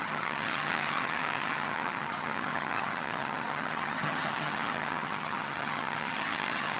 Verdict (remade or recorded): remade